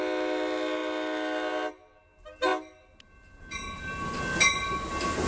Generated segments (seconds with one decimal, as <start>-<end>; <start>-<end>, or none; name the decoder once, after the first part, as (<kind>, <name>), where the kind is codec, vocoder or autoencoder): none